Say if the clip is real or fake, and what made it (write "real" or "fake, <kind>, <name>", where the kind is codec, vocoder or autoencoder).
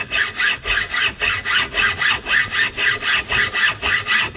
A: real